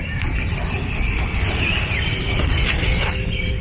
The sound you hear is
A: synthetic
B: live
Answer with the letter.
A